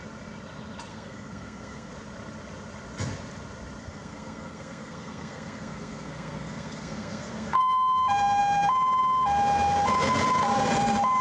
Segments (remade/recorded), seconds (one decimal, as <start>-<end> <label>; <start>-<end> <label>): 0.0-0.9 recorded; 0.9-1.9 remade; 1.9-3.8 recorded; 3.8-7.6 remade; 7.6-11.2 recorded